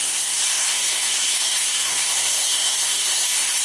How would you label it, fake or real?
fake